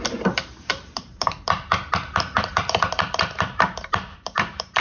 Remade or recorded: remade